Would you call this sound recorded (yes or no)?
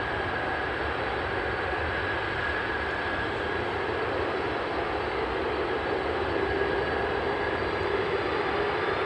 yes